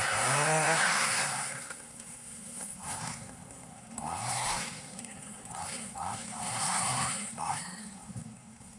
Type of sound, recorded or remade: remade